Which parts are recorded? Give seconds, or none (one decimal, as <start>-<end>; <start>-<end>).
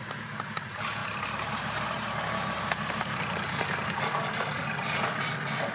0.0-1.0; 4.4-5.7